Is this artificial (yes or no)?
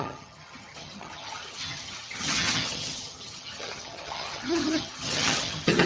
yes